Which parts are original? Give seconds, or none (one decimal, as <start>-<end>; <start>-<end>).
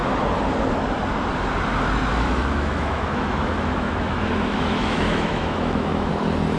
0.0-2.1; 6.1-6.6